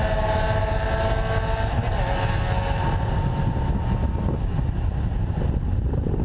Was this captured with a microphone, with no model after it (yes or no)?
yes